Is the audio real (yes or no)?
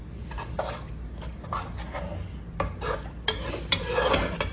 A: yes